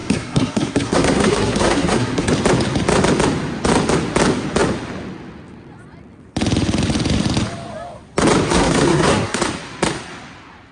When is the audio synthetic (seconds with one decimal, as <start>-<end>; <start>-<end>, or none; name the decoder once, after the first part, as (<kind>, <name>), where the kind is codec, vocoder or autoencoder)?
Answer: 0.0-2.3 (codec, SNAC); 8.5-9.4